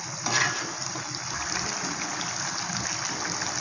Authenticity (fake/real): real